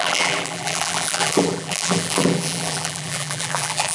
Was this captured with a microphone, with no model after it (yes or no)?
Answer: no